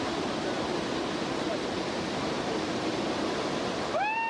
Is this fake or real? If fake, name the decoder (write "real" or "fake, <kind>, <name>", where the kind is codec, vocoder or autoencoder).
real